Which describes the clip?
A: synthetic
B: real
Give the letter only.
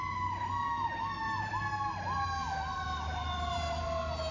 B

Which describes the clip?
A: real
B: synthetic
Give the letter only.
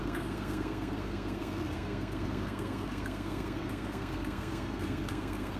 B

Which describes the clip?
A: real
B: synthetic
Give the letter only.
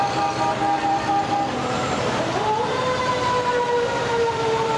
B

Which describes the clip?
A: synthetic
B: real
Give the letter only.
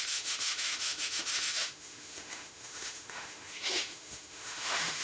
A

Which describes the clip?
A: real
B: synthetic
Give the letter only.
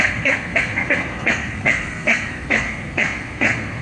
B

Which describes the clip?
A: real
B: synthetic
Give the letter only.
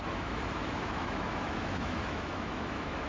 B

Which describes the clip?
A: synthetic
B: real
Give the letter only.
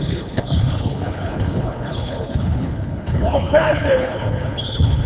A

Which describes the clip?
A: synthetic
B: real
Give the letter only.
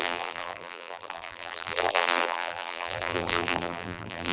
A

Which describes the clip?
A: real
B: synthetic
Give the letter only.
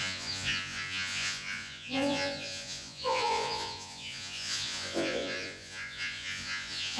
B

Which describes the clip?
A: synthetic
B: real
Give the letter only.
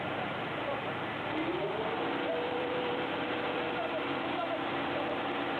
A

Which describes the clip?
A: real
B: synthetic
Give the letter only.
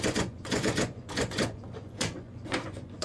B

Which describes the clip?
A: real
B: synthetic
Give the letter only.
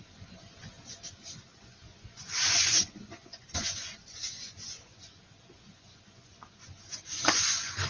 B